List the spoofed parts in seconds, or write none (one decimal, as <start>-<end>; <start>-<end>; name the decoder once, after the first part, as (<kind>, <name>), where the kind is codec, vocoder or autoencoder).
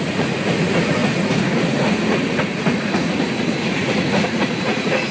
0.0-5.1 (vocoder, Vocos)